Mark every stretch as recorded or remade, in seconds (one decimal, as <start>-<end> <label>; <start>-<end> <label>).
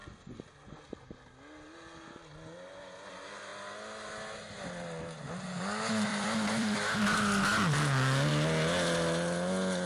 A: 0.0-6.1 recorded; 6.1-7.0 remade; 7.0-9.9 recorded